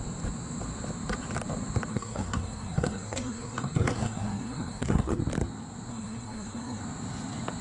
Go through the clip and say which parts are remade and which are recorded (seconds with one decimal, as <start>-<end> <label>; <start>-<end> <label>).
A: 0.0-1.9 recorded; 1.9-5.2 remade; 5.2-5.9 recorded; 5.9-6.8 remade; 6.8-7.6 recorded